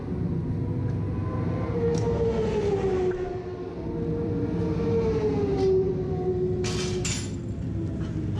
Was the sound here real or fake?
real